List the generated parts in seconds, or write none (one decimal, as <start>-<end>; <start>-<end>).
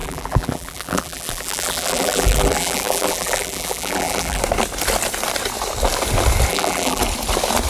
0.0-4.4; 6.5-7.0